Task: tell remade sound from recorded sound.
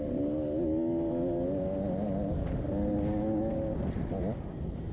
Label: recorded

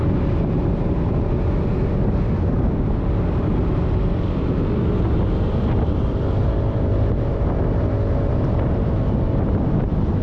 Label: recorded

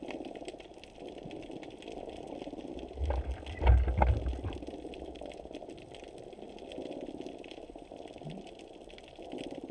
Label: recorded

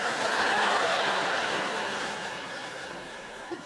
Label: remade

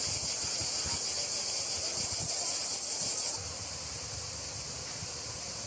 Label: recorded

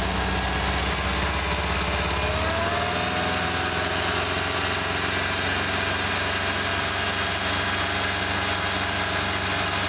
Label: recorded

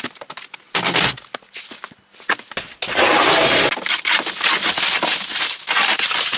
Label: recorded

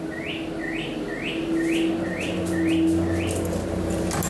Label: recorded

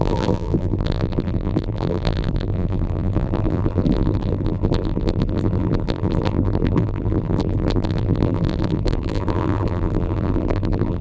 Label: remade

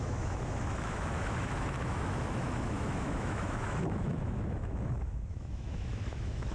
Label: remade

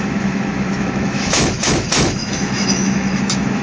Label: remade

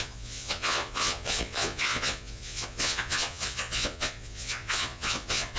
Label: remade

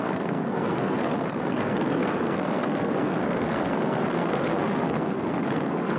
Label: remade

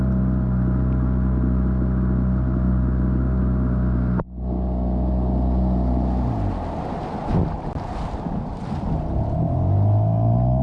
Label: recorded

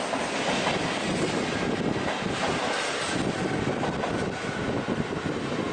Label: recorded